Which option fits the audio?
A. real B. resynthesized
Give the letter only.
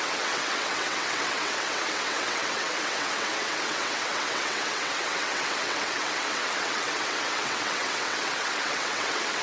B